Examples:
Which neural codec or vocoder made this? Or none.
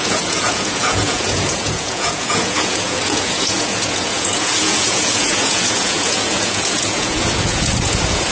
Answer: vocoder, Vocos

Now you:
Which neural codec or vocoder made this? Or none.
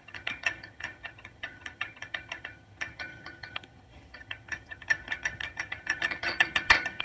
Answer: vocoder, HiFi-GAN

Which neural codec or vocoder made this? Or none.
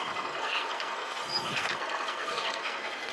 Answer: codec, SNAC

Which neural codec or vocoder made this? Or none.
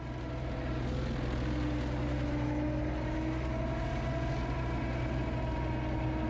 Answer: none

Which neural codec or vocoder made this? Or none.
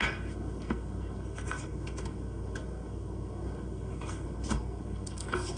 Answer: codec, SNAC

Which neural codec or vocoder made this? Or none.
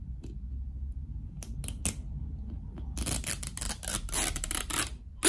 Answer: none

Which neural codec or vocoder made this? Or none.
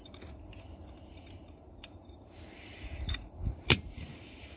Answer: vocoder, BigVGAN v2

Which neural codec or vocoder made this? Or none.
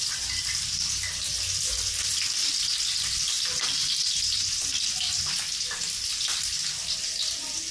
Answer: none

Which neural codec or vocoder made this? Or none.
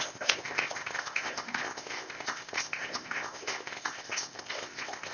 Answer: codec, ZipCodec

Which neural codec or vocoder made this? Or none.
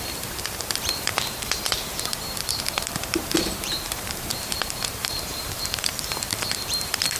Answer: vocoder, BigVGAN v2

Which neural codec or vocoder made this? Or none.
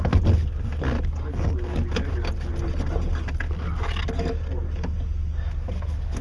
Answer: none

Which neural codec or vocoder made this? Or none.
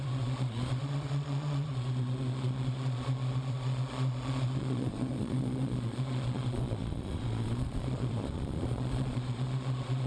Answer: vocoder, Vocos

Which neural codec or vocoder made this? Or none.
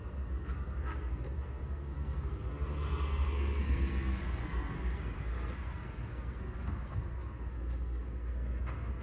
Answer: codec, SNAC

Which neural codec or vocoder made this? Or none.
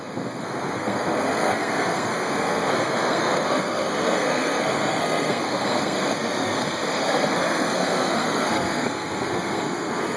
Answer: codec, SNAC